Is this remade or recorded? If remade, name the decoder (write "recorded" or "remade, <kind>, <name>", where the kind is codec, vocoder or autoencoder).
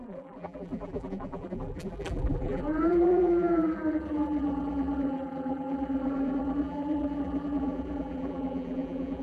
remade, vocoder, BigVGAN v2